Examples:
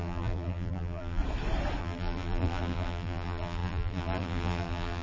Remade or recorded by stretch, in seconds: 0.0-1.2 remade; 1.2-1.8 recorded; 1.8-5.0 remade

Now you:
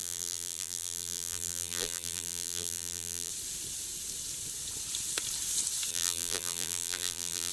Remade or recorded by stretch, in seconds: 0.0-3.3 remade; 3.3-5.9 recorded; 5.9-7.5 remade